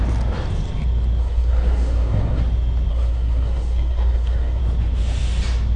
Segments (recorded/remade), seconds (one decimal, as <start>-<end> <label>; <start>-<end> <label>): 0.0-1.2 recorded; 1.2-2.4 remade; 2.4-2.9 recorded; 2.9-4.6 remade; 4.6-5.8 recorded